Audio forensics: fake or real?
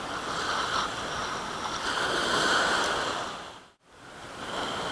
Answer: real